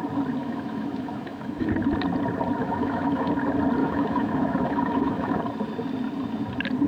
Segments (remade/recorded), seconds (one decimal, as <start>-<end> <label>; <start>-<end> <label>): 0.0-0.4 recorded; 0.4-1.7 remade; 1.7-2.6 recorded; 2.6-3.3 remade; 3.3-3.8 recorded; 3.8-5.4 remade; 5.4-6.9 recorded